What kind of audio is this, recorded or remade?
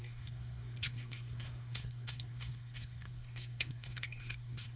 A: remade